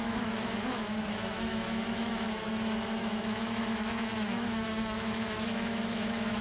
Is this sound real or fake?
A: fake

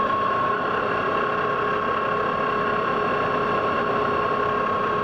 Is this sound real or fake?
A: real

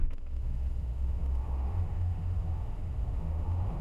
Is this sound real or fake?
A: fake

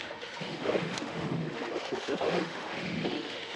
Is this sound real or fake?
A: fake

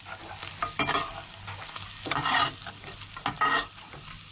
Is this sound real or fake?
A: real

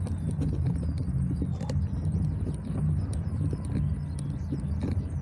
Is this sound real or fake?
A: real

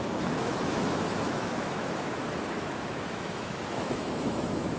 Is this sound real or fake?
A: fake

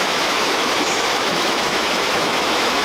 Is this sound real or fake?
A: fake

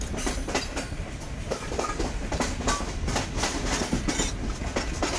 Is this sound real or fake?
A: real